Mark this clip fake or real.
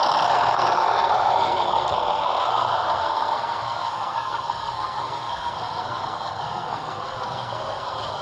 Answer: fake